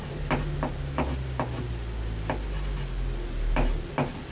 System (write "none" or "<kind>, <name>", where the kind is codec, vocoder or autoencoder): none